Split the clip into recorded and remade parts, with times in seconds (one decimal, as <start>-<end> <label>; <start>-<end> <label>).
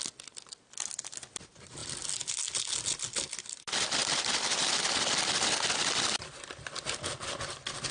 0.0-4.0 recorded; 4.0-4.8 remade; 4.8-7.9 recorded